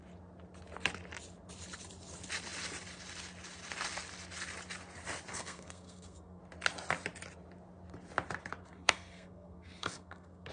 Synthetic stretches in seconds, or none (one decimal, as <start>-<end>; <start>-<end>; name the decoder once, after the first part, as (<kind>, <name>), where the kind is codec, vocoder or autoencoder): 5.3-6.4 (codec, SNAC); 8.6-10.5